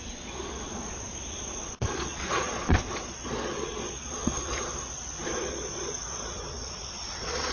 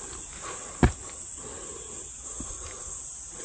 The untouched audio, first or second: second